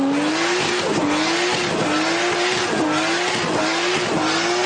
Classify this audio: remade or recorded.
recorded